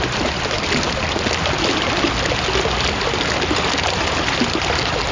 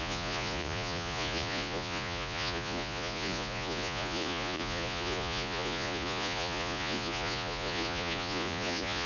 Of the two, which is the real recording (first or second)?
first